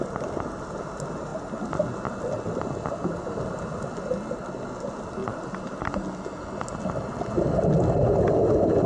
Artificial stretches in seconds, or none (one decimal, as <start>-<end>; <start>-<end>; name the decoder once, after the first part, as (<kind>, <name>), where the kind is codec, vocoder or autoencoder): none